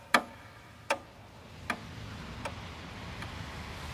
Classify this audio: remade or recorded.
recorded